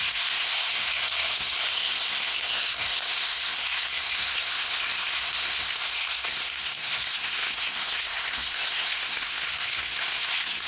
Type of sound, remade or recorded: remade